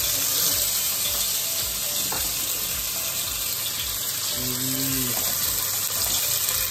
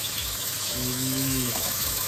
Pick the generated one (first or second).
second